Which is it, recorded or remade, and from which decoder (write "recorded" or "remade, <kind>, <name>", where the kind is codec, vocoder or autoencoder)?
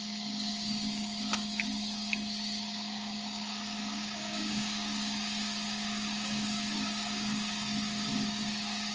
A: remade, codec, DAC